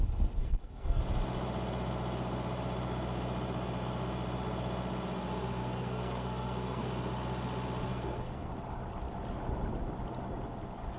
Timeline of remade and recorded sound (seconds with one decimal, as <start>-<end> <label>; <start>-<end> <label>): 0.0-0.4 recorded; 0.4-1.0 remade; 1.0-5.6 recorded; 5.6-6.9 remade; 6.9-7.9 recorded; 7.9-8.5 remade; 8.5-11.0 recorded